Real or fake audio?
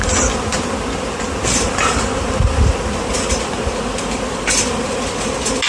real